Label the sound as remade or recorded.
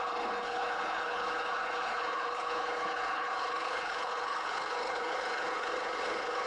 remade